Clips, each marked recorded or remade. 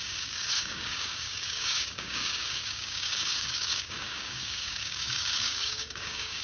remade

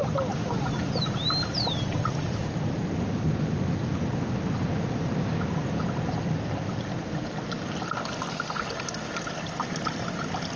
recorded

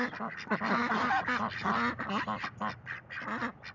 recorded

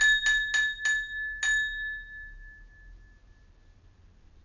recorded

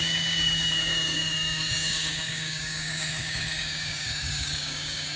remade